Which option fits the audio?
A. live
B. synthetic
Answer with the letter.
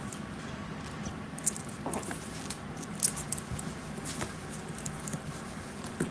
A